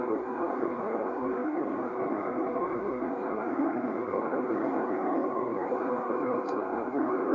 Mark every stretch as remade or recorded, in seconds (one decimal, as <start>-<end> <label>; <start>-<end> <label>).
0.0-7.3 remade